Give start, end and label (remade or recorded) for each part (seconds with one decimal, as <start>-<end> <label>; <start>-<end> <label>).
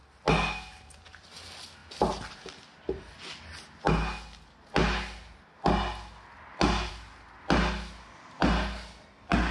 0.0-9.5 recorded